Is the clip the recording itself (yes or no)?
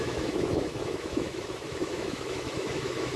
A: no